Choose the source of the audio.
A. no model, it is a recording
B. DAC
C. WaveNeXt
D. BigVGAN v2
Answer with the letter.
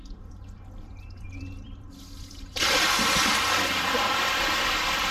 D